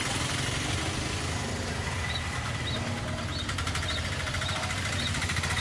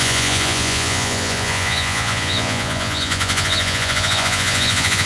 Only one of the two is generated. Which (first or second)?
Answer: second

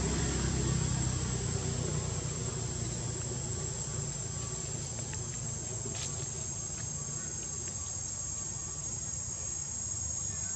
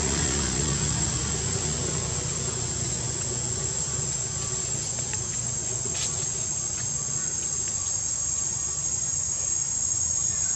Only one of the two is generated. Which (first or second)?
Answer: second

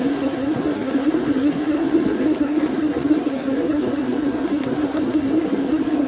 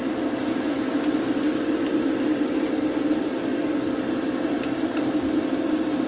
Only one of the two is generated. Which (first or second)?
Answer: first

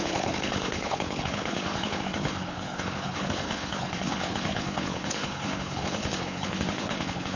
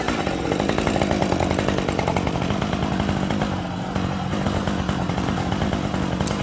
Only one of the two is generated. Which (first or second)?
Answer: first